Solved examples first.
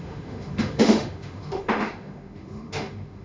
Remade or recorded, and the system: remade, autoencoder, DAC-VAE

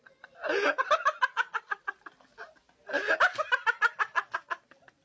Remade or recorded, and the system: recorded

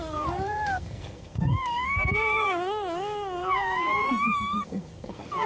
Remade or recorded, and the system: remade, codec, SNAC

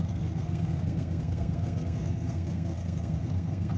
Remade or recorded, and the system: remade, codec, SNAC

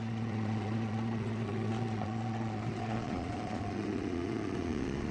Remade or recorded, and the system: remade, vocoder, Vocos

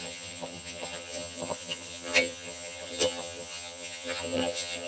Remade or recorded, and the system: remade, vocoder, HiFi-GAN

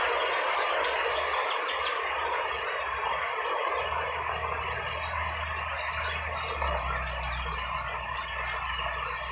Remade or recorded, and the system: recorded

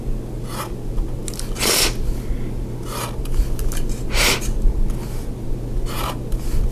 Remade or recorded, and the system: recorded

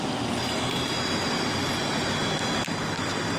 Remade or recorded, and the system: remade, vocoder, BigVGAN v2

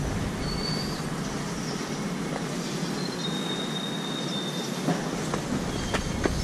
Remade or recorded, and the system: recorded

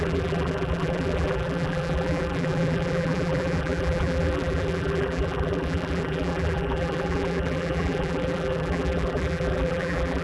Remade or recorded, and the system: remade, vocoder, BigVGAN v2